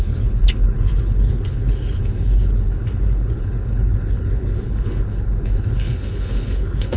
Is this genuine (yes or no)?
no